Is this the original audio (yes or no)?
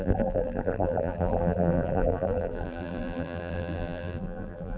no